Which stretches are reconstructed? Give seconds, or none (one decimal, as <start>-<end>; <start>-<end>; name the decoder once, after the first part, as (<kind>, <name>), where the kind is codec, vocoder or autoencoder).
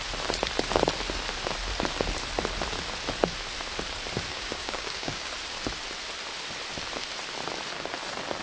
4.3-5.3 (codec, DAC)